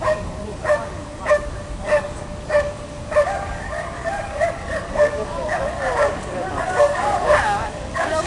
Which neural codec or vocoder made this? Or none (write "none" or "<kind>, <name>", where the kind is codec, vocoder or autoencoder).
codec, DAC